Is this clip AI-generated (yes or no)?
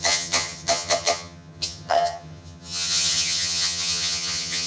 yes